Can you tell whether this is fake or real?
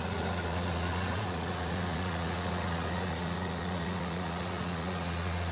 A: fake